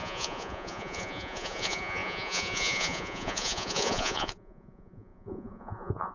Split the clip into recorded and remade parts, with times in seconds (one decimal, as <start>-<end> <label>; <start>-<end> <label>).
0.0-6.1 remade